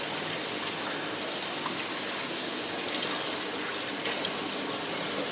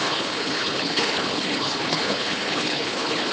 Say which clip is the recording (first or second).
first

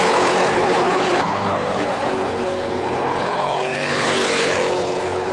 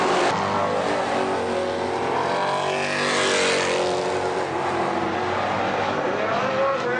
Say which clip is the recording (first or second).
second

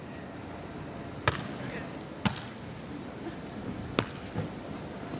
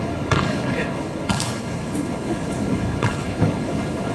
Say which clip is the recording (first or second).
first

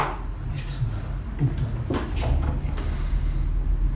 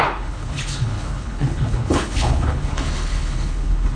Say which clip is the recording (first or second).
first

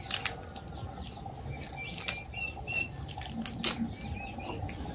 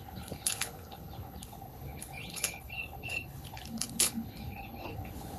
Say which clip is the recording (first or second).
first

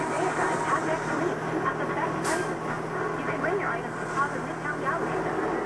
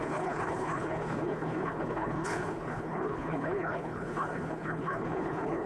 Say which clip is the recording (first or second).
first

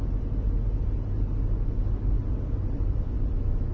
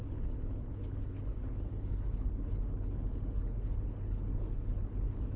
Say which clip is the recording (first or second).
first